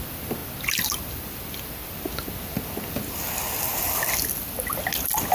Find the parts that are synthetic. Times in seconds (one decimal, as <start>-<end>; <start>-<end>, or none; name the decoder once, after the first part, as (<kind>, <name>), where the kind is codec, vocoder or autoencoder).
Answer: none